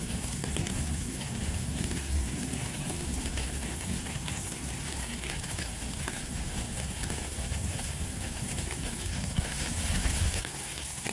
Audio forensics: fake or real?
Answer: fake